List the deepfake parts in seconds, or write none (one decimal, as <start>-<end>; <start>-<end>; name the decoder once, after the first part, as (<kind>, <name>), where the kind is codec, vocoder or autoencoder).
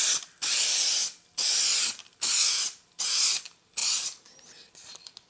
none